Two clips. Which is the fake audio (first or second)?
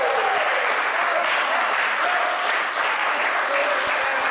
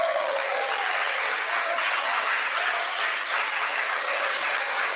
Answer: second